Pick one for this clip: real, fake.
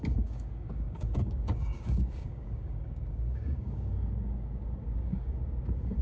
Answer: fake